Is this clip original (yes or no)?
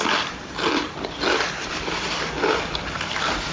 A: no